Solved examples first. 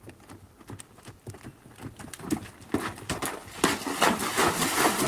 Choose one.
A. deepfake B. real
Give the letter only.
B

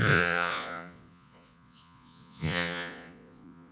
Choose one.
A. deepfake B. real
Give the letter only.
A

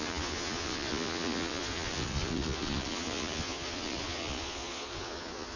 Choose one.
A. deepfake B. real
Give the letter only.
A